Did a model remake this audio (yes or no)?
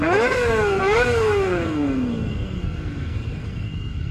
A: yes